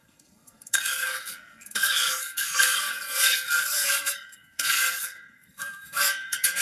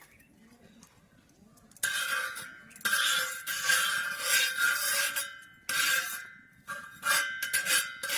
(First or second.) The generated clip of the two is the first